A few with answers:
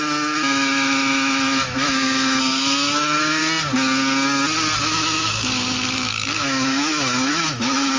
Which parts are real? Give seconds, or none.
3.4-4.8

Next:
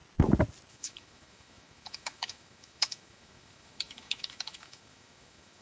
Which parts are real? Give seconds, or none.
0.0-0.7

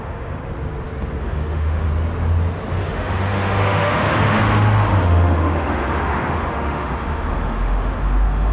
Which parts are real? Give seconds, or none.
0.4-1.2; 1.9-2.8

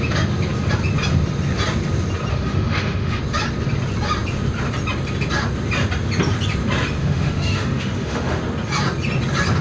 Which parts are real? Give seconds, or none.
0.0-2.3; 3.2-7.0; 8.4-9.6

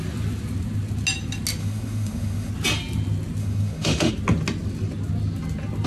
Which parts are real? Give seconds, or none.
0.0-1.6; 2.5-3.4; 4.1-5.9

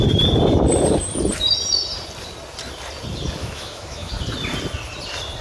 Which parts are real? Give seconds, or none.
0.0-3.4; 4.1-5.4

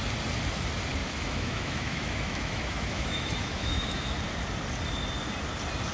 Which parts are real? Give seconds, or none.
0.0-1.0; 4.2-5.9